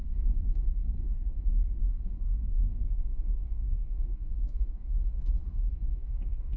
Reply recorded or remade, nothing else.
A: remade